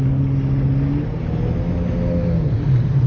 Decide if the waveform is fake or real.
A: real